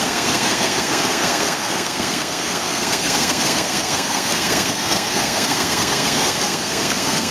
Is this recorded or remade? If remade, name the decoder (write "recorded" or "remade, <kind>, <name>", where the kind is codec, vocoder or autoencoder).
remade, codec, SNAC